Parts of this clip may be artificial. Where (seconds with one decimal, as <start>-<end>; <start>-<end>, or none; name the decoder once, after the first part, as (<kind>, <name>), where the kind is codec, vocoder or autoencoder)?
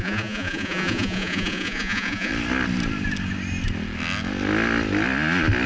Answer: 0.0-2.3 (vocoder, Vocos)